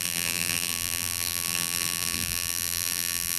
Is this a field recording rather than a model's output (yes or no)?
no